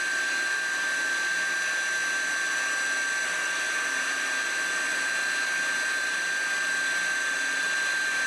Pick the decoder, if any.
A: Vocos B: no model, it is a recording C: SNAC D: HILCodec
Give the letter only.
B